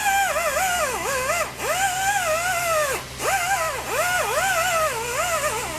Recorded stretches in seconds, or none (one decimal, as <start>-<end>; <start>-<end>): 0.0-5.8